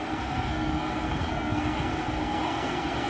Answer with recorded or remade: remade